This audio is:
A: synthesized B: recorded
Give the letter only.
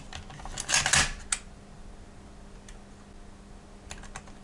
B